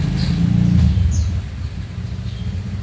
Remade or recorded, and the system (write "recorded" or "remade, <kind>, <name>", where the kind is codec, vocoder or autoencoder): recorded